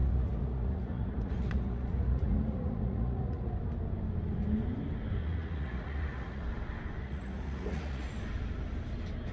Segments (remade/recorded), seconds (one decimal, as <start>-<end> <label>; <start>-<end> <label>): 0.0-3.5 remade; 3.5-5.2 recorded; 5.2-6.4 remade; 6.4-7.0 recorded; 7.0-8.2 remade; 8.2-9.3 recorded